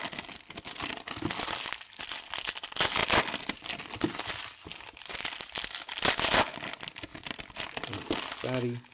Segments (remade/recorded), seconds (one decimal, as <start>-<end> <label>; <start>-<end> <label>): 0.0-3.0 recorded; 3.0-3.6 remade; 3.6-7.1 recorded; 7.1-7.6 remade; 7.6-8.9 recorded